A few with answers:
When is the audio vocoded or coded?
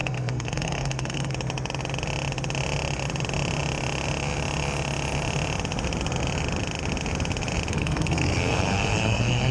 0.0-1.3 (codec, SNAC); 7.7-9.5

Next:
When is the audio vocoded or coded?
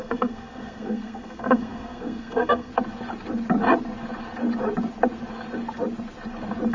0.0-2.7 (codec, SNAC)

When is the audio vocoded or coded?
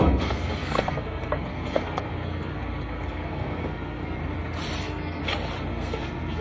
0.0-4.2 (codec, SNAC); 4.8-5.2; 5.7-6.4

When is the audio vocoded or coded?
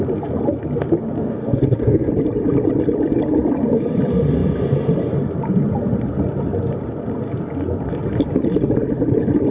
1.2-2.1 (codec, SNAC)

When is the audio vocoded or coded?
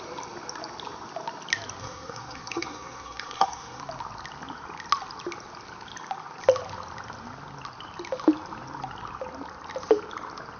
1.8-3.8 (codec, SNAC)